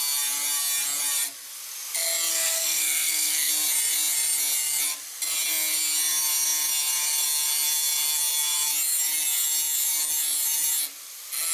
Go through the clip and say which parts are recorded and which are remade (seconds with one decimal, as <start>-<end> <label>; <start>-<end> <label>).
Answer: 0.0-2.3 recorded; 2.3-3.5 remade; 3.5-11.5 recorded

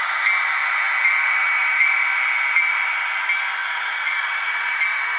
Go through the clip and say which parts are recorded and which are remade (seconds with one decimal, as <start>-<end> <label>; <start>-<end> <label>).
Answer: 0.0-3.6 recorded; 3.6-4.8 remade; 4.8-5.2 recorded

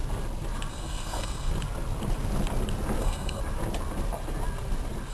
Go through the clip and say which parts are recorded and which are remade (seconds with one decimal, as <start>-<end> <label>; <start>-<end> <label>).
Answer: 0.0-0.7 recorded; 0.7-1.5 remade; 1.5-3.0 recorded; 3.0-3.4 remade; 3.4-5.1 recorded